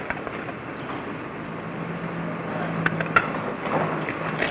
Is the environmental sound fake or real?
real